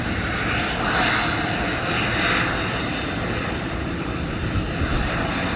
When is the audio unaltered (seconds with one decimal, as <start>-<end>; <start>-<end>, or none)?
0.0-5.6

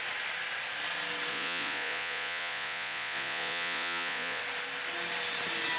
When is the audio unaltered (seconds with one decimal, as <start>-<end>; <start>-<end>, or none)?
0.0-1.3; 4.4-5.8

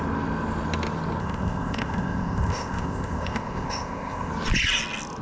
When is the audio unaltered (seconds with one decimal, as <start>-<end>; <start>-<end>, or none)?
0.0-1.2; 4.3-5.2

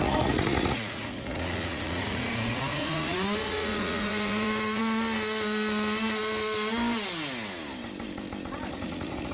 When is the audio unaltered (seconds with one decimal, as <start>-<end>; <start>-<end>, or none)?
4.8-8.7

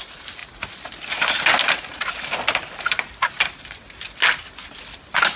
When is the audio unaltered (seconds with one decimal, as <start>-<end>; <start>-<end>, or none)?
0.0-5.4

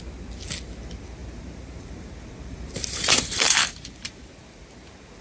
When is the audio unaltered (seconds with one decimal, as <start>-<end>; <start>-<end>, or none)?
0.0-1.2; 4.3-5.2